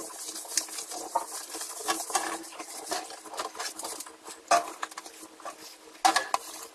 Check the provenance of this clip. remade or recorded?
recorded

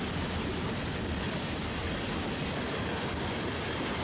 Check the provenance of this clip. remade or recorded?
recorded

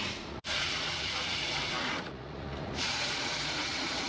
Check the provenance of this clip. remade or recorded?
remade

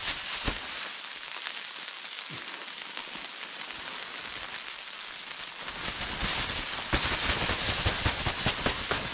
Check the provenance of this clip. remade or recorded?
recorded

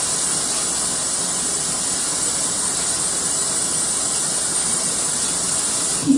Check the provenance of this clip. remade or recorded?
recorded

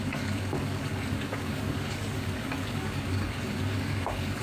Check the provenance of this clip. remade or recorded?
remade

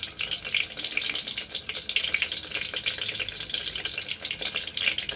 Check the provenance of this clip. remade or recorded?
recorded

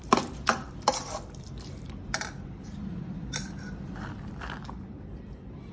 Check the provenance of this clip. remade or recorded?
remade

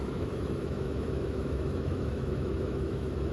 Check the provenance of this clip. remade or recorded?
remade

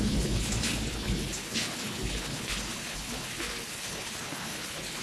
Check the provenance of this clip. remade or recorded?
remade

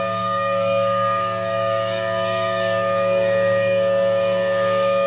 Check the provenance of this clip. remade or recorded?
remade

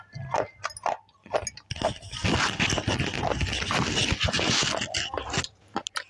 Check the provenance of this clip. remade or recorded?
recorded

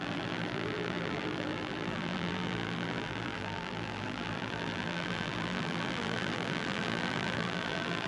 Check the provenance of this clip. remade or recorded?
remade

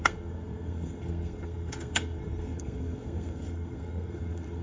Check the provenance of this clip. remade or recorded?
remade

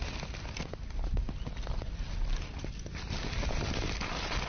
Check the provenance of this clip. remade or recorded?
recorded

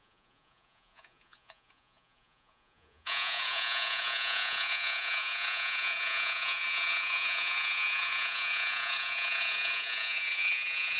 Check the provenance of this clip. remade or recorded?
remade